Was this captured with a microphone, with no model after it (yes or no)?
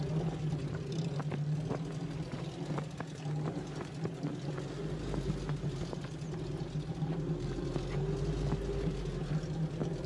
yes